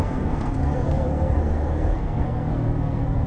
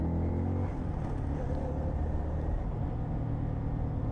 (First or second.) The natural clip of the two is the second